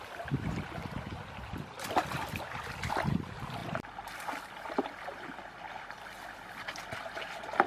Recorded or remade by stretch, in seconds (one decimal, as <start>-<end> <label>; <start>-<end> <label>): 0.0-7.7 recorded